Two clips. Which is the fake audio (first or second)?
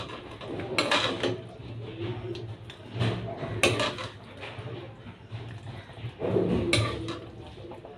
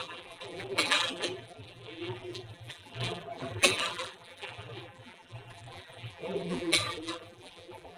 second